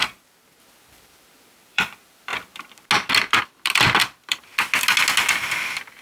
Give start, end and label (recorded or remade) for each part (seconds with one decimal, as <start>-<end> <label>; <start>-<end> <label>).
0.0-0.6 recorded; 0.6-2.3 remade; 2.3-3.4 recorded; 3.4-4.5 remade; 4.5-5.3 recorded; 5.3-6.0 remade